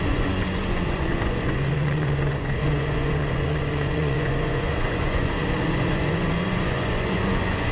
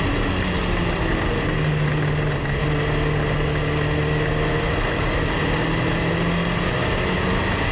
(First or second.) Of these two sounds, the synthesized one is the first